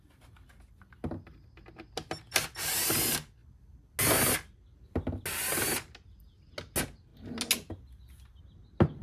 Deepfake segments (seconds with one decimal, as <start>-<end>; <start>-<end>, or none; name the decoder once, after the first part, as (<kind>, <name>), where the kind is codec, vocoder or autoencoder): none